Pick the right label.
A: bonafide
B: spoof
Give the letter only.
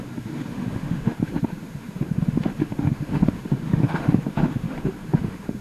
B